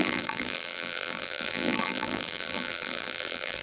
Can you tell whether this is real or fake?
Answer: fake